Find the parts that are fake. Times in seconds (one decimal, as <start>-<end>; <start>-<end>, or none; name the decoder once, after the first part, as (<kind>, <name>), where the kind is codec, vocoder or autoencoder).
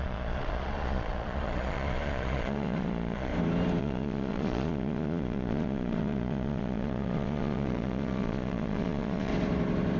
0.0-3.3 (vocoder, Vocos); 3.8-9.3